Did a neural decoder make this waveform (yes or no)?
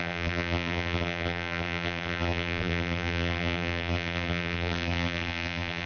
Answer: yes